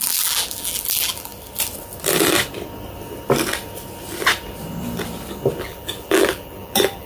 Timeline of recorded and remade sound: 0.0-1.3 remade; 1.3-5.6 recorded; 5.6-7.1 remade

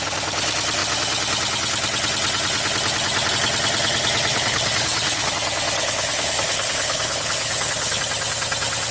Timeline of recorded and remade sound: 0.0-4.3 recorded; 4.3-5.3 remade; 5.3-5.8 recorded; 5.8-8.0 remade; 8.0-8.9 recorded